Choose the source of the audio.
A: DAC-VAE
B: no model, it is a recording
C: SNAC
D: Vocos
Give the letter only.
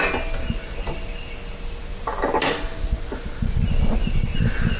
B